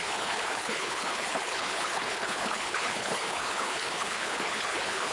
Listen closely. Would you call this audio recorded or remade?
remade